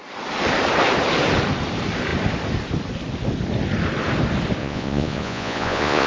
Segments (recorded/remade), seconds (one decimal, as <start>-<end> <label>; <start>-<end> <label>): 0.0-4.6 recorded; 4.6-6.1 remade